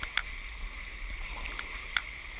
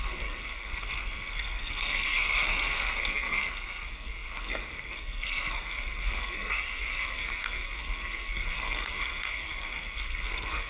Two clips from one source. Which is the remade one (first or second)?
second